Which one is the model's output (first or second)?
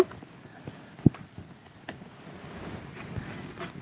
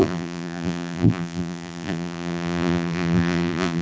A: second